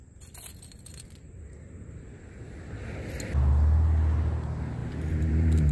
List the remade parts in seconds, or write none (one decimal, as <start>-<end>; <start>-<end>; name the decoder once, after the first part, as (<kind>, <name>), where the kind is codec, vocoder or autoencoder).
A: 4.8-5.7 (vocoder, BigVGAN v2)